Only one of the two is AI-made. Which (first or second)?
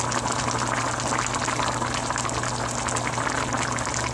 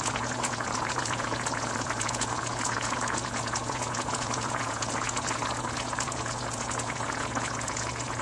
second